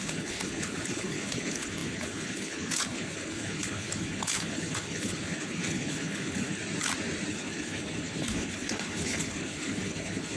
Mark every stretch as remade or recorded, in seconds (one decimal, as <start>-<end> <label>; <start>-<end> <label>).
0.0-6.6 remade; 6.6-7.3 recorded; 7.3-10.4 remade